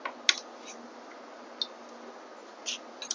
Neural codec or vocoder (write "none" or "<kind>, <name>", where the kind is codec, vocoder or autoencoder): none